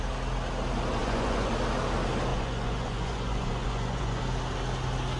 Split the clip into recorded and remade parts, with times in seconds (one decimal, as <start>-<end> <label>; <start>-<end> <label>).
0.0-1.0 recorded; 1.0-1.5 remade; 1.5-2.3 recorded; 2.3-4.2 remade; 4.2-5.2 recorded